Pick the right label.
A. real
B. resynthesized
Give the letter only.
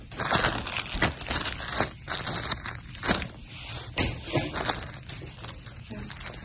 A